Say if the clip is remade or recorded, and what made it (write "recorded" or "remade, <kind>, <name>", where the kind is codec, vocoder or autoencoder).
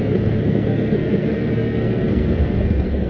remade, codec, SNAC